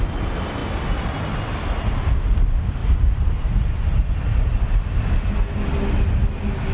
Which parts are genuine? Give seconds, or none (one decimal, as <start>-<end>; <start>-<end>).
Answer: 0.0-2.8; 3.7-6.7